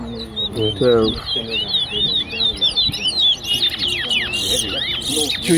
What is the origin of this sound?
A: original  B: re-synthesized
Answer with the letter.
A